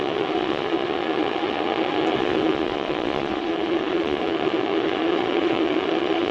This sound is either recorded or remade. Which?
remade